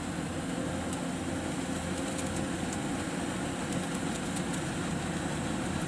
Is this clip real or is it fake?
real